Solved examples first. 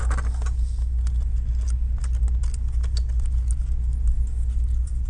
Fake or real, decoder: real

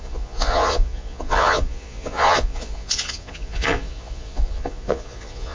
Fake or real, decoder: fake, vocoder, Vocos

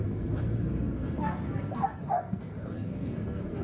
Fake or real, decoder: fake, codec, SNAC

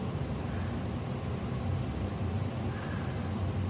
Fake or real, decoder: real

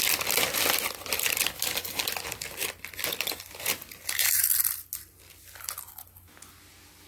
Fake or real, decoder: real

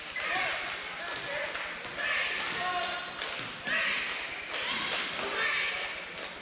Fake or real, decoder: real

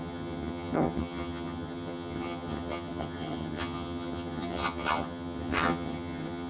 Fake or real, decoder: fake, vocoder, HiFi-GAN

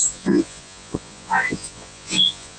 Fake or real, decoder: fake, vocoder, Vocos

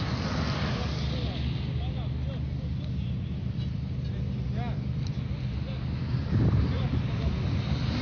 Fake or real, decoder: real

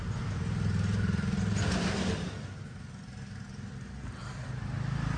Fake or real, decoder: real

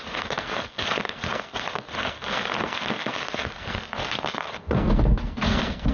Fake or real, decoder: fake, codec, SNAC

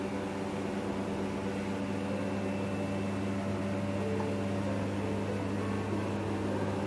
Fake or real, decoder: real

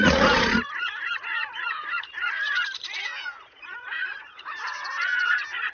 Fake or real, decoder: fake, vocoder, Vocos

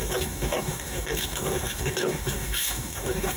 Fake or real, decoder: fake, codec, DAC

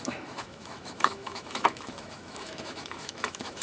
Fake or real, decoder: fake, autoencoder, DAC-VAE